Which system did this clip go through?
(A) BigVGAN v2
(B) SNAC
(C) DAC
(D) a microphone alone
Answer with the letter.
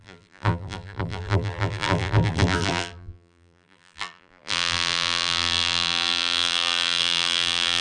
A